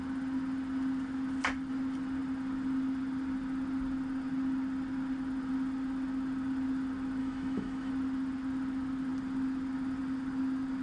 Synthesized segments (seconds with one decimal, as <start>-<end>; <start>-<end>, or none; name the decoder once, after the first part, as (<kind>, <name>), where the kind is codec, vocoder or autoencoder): 7.2-7.9 (autoencoder, DAC-VAE)